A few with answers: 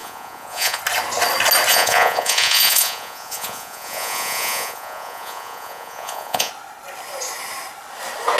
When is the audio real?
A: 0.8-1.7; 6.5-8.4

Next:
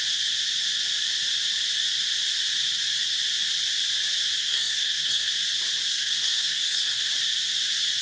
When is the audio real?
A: 0.0-4.4; 5.3-5.9; 7.1-8.0

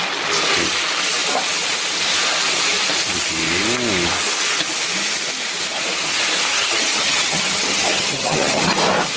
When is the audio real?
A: 0.0-6.5; 8.6-9.2

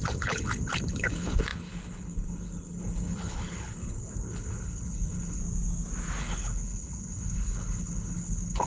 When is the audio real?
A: 5.4-6.2

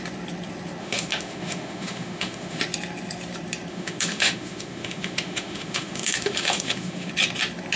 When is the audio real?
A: 0.0-0.8; 2.6-3.7; 7.1-7.8